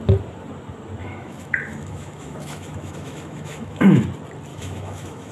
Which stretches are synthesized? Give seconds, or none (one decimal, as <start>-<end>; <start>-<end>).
1.0-4.0; 4.5-5.3